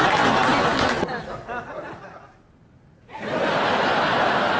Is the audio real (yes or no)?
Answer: yes